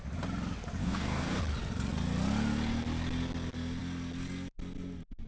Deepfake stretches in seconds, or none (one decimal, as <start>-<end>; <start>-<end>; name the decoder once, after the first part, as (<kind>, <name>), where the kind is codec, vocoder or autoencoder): 0.8-1.4 (codec, DAC)